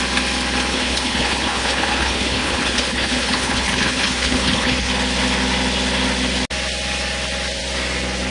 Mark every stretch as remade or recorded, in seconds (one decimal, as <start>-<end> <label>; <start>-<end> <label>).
0.0-0.7 recorded; 0.7-4.9 remade; 4.9-8.3 recorded